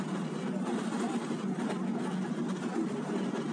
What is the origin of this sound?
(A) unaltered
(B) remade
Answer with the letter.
A